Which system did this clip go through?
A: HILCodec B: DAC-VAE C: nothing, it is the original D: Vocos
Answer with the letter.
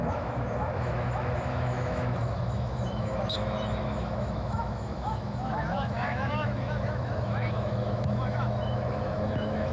B